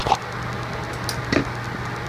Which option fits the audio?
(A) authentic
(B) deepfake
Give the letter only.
A